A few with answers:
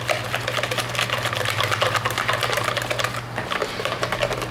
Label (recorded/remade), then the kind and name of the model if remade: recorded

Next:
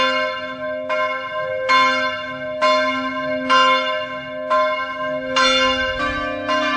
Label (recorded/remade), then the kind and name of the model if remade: recorded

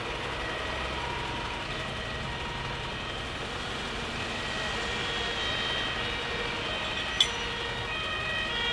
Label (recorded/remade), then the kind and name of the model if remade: recorded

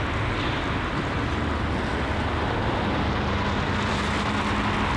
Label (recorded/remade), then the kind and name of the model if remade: recorded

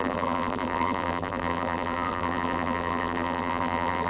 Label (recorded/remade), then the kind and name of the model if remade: remade, vocoder, BigVGAN v2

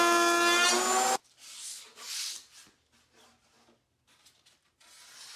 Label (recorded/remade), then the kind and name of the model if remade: recorded